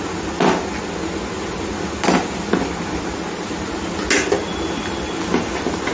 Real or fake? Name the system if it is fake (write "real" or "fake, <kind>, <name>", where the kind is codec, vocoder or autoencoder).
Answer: real